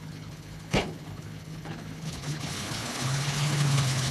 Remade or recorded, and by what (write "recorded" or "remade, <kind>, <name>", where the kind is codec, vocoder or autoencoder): remade, codec, HILCodec